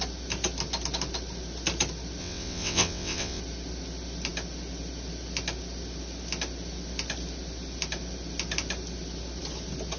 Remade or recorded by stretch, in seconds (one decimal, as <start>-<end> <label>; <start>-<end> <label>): 0.0-2.2 recorded; 2.2-3.4 remade; 3.4-10.0 recorded